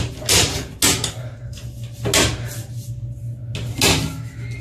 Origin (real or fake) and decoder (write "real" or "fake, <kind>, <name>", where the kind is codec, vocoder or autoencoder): real